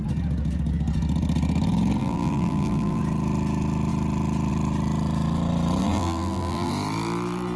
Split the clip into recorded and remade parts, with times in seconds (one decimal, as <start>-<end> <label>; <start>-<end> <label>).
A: 0.0-2.0 recorded; 2.0-3.0 remade; 3.0-5.8 recorded; 5.8-6.7 remade; 6.7-7.6 recorded